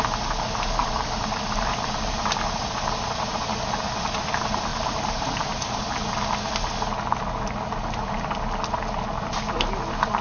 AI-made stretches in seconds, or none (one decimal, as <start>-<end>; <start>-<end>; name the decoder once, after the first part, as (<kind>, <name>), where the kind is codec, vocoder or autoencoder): 0.8-2.7 (vocoder, BigVGAN v2); 4.7-5.8